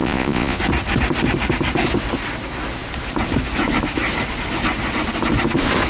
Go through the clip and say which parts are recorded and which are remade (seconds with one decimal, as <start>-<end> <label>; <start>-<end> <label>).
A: 0.0-0.6 remade; 0.6-5.9 recorded